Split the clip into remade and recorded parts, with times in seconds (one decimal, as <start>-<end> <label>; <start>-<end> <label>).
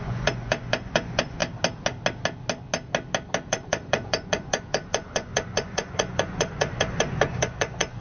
0.0-1.4 remade; 1.4-3.5 recorded; 3.5-8.0 remade